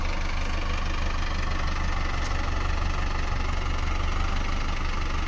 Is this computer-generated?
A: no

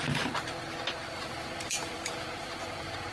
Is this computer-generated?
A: yes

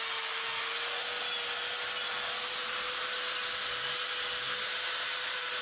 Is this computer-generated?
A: no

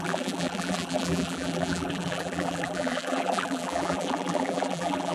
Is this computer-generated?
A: yes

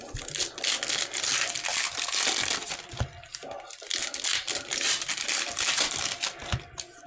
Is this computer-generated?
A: no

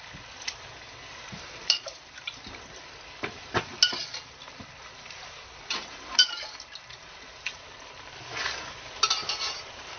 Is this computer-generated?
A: no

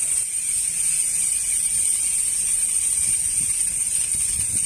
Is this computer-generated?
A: yes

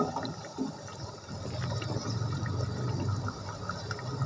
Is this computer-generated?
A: no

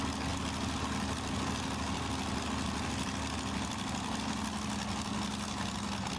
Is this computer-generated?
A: no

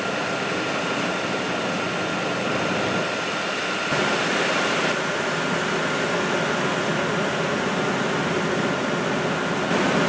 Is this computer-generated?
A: no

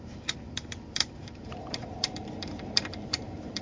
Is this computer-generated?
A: yes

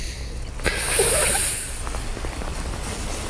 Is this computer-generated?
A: no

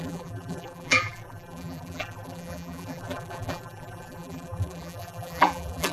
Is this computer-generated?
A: yes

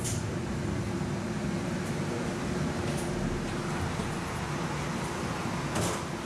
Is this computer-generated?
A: no